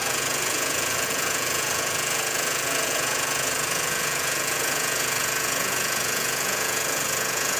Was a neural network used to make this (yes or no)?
yes